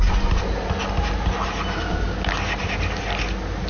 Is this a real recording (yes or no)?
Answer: yes